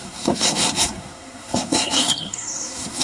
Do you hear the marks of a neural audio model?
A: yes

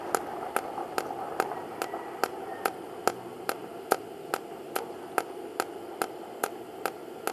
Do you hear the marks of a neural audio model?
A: no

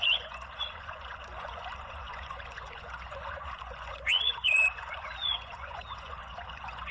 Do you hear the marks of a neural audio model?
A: yes